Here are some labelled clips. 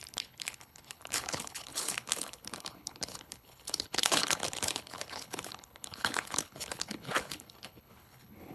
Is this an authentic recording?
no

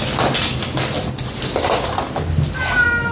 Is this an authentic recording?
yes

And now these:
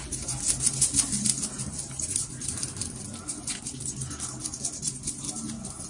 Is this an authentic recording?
yes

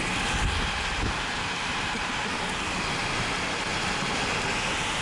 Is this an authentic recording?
yes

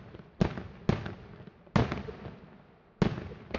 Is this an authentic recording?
yes